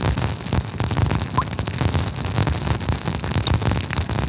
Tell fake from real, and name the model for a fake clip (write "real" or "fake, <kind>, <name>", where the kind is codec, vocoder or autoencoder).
real